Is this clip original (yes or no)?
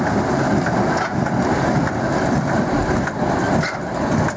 yes